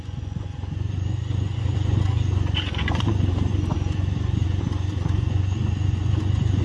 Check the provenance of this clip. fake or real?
fake